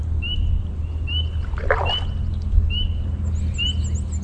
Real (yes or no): yes